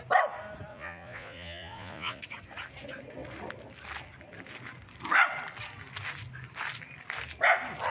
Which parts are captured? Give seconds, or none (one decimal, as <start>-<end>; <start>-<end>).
0.0-0.7; 2.2-7.9